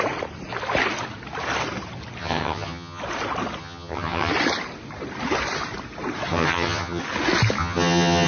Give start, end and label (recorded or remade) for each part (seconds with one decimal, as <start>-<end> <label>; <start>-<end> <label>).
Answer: 0.0-2.2 recorded; 2.2-3.0 remade; 3.0-3.6 recorded; 3.6-4.3 remade; 4.3-6.3 recorded; 6.3-7.0 remade; 7.0-7.6 recorded; 7.6-8.3 remade

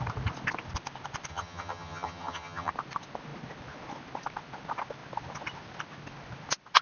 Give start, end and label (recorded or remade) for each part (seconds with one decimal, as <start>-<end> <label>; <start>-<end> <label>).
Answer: 0.0-1.3 recorded; 1.3-2.7 remade; 2.7-6.8 recorded

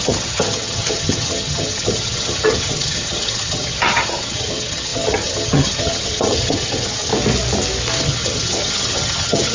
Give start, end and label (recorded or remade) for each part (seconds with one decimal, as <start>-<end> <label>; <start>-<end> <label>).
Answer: 0.0-7.1 remade; 7.1-8.0 recorded; 8.0-9.5 remade

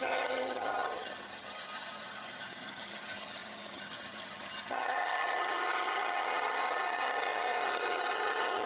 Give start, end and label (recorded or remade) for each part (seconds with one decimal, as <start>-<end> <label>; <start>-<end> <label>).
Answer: 0.0-8.7 remade

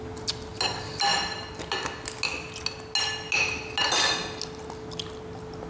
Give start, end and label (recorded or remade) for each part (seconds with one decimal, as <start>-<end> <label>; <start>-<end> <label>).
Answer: 0.0-5.7 recorded